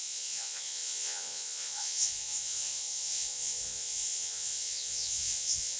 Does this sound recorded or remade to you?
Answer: remade